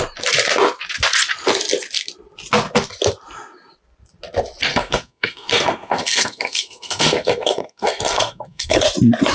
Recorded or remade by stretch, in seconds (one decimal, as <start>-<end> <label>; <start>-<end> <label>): 0.0-4.7 recorded; 4.7-8.8 remade; 8.8-9.3 recorded